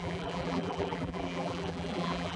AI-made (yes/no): yes